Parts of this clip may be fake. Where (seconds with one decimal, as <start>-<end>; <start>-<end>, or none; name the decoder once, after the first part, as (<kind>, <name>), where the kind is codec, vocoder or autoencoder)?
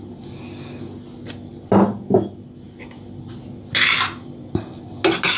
none